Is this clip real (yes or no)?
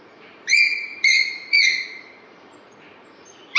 no